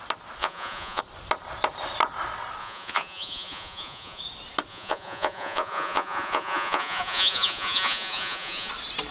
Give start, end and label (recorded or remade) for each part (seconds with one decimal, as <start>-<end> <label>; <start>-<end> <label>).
0.0-0.4 recorded; 0.4-1.0 remade; 1.0-2.6 recorded; 2.6-4.2 remade; 4.2-4.7 recorded; 4.7-8.7 remade; 8.7-9.1 recorded